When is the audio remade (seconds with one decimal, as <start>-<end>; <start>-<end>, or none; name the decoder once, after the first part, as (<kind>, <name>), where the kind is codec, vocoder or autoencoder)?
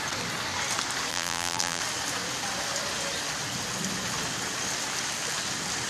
1.1-1.8 (vocoder, BigVGAN v2)